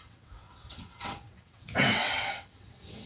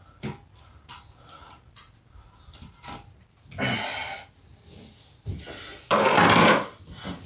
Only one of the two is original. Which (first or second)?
second